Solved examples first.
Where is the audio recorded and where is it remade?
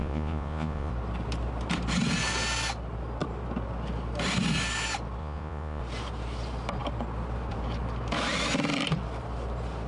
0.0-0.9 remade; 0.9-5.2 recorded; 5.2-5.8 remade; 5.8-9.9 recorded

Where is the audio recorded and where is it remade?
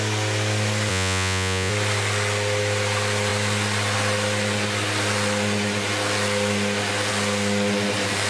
0.0-0.9 recorded; 0.9-1.7 remade; 1.7-8.3 recorded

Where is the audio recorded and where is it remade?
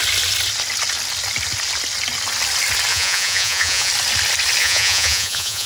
0.0-2.9 recorded; 2.9-3.9 remade; 3.9-4.6 recorded; 4.6-5.7 remade